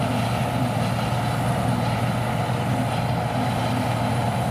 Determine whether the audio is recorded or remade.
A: recorded